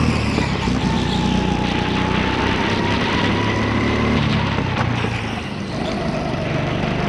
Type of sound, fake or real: real